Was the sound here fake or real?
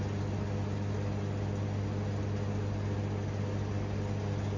real